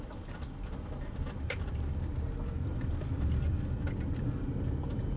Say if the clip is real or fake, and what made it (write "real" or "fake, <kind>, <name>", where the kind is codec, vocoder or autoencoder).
real